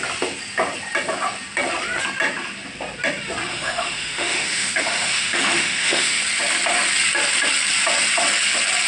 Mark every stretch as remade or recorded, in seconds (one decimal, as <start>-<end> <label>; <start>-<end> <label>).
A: 0.0-3.5 recorded; 3.5-6.2 remade; 6.2-8.9 recorded